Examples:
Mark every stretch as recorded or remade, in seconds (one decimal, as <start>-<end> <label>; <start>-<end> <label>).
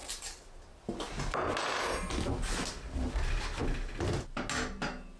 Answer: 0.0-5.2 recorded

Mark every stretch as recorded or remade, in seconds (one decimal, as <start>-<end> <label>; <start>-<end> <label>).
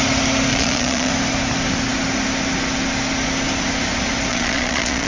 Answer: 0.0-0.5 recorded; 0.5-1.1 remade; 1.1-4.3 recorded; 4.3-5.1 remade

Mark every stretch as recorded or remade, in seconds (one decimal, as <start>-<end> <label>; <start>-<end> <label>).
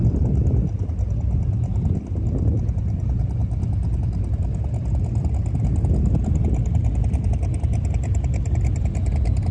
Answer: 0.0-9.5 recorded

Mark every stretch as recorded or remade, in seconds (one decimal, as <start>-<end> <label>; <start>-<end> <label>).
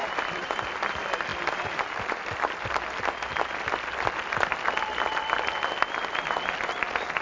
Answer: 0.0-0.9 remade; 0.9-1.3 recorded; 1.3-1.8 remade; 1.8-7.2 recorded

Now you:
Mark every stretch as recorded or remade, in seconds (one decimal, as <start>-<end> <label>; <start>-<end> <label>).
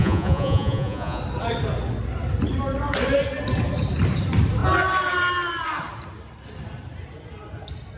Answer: 0.0-1.2 remade; 1.2-8.0 recorded